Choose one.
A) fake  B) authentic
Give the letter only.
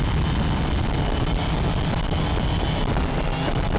B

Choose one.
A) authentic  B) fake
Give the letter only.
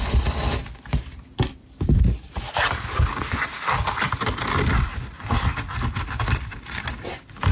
A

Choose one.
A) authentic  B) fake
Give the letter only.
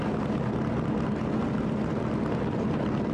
A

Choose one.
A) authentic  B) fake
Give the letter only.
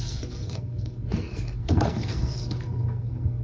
B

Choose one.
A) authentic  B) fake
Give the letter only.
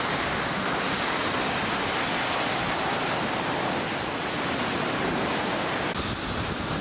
A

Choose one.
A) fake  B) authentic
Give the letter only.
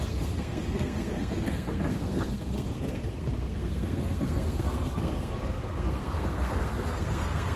A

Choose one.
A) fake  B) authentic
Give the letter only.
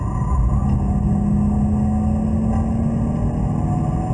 B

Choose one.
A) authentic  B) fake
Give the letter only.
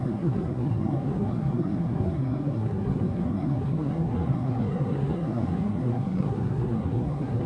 B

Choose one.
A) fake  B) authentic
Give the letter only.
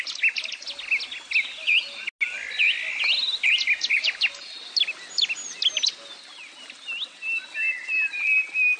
B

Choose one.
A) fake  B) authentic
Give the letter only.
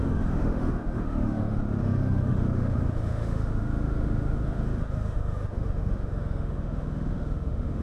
A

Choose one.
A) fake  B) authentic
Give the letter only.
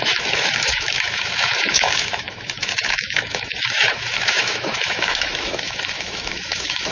A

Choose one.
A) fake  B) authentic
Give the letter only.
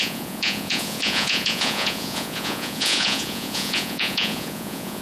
A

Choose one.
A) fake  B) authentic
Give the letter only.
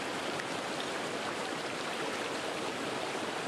B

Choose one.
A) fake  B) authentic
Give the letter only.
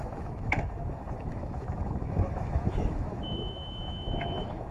A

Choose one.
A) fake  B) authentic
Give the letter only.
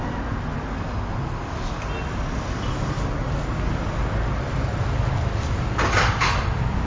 B